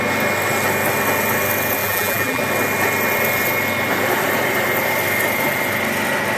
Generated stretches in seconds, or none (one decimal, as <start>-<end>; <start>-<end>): 1.8-2.4

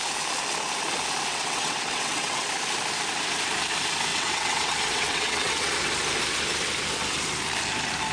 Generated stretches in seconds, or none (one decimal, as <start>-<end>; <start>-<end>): 1.3-2.5; 4.1-5.7

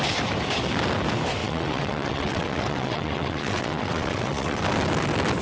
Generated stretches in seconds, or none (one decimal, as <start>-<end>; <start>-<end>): 1.4-4.6

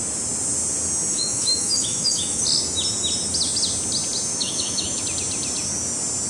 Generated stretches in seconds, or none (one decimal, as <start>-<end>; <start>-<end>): 1.1-2.4; 4.3-5.0

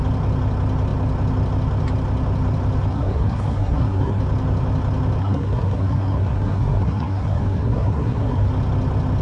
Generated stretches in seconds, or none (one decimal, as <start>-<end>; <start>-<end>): 2.9-4.2; 5.2-8.5

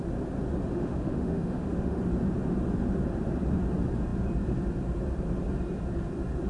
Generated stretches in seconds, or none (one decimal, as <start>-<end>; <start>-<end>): 0.7-2.0

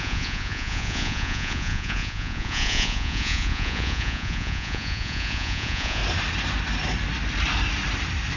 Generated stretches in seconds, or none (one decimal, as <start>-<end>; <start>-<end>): 0.0-6.0

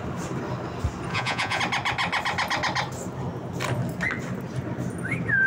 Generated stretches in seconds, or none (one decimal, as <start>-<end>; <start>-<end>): 1.1-1.6